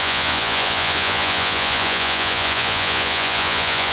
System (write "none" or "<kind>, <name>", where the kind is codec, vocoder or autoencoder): vocoder, Vocos